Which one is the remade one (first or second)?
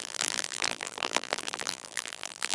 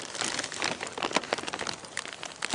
first